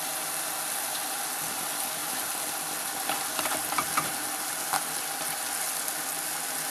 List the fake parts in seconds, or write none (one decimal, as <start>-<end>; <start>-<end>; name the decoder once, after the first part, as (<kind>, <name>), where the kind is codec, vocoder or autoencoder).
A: none

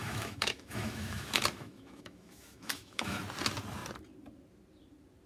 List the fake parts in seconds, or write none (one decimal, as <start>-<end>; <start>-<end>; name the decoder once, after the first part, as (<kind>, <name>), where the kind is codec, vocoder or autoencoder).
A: 0.0-3.2 (autoencoder, DAC-VAE)